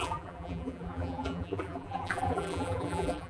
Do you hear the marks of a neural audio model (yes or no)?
yes